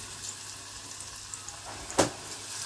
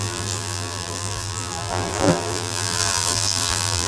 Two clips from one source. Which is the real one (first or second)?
first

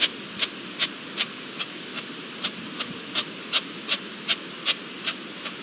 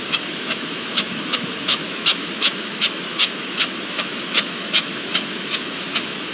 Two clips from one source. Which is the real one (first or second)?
first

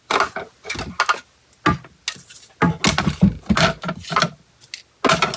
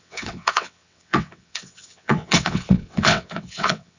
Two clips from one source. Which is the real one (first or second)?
first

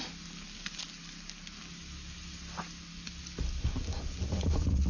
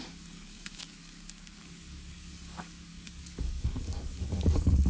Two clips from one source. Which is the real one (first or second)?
first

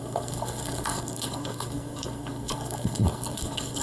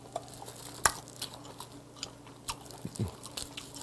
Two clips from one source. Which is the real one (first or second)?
second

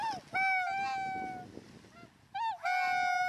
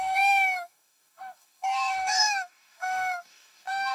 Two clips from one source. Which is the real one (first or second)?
first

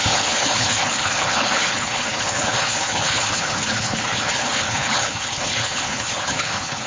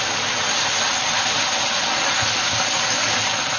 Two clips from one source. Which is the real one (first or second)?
second